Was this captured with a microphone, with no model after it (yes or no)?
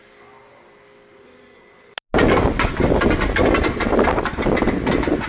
yes